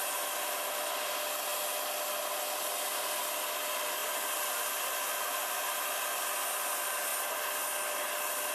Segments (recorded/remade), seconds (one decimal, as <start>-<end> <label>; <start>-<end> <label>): 0.0-8.5 recorded